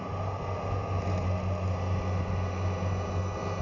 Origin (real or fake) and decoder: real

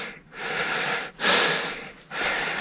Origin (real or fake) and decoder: real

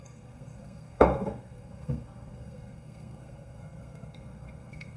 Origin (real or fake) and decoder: fake, codec, SNAC